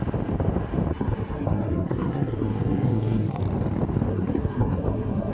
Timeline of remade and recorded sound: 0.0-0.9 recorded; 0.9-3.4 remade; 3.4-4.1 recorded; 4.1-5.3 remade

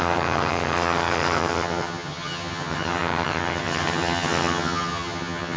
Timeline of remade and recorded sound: 0.0-5.6 remade

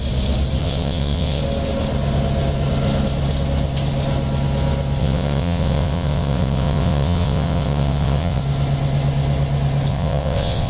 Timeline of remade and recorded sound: 0.0-0.6 recorded; 0.6-1.4 remade; 1.4-5.0 recorded; 5.0-8.4 remade; 8.4-9.9 recorded; 9.9-10.7 remade

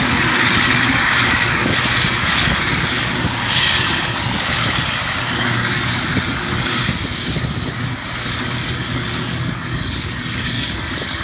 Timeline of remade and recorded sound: 0.0-6.8 remade; 6.8-8.4 recorded; 8.4-11.2 remade

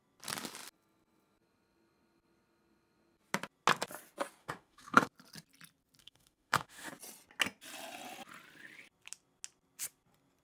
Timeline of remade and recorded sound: 0.0-4.4 recorded; 4.4-5.1 remade; 5.1-6.0 recorded; 6.0-6.9 remade; 6.9-10.4 recorded

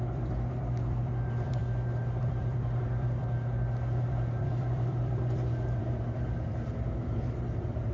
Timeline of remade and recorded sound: 0.0-1.6 remade; 1.6-2.2 recorded; 2.2-7.9 remade

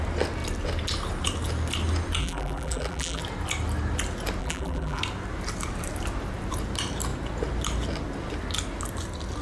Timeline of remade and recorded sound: 0.0-2.2 recorded; 2.2-3.2 remade; 3.2-4.4 recorded; 4.4-5.0 remade; 5.0-9.4 recorded

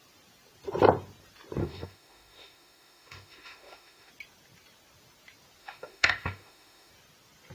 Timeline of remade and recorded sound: 0.0-1.6 recorded; 1.6-4.1 remade; 4.1-5.6 recorded; 5.6-6.9 remade; 6.9-7.5 recorded